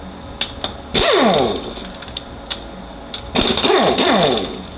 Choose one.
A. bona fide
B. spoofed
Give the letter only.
A